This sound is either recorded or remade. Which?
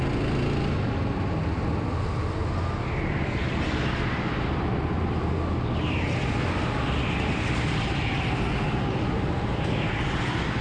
recorded